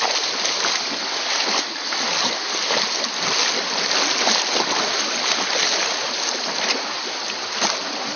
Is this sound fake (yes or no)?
no